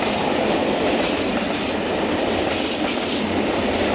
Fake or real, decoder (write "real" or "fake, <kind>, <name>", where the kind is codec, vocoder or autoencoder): real